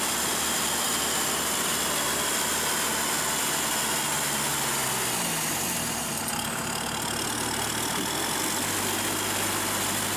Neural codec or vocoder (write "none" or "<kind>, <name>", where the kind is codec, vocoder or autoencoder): none